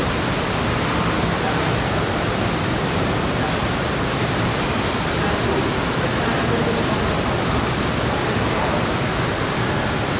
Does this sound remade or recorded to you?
recorded